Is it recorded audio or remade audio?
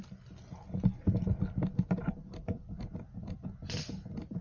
recorded